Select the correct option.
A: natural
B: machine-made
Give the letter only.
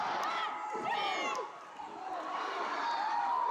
A